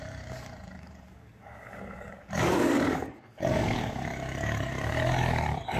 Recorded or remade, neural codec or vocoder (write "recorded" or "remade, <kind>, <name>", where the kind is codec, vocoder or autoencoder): remade, codec, DAC